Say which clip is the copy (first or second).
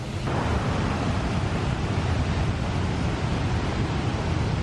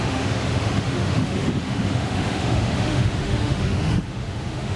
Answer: second